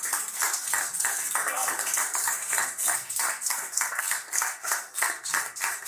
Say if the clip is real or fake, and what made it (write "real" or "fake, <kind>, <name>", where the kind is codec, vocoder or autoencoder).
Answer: fake, codec, SNAC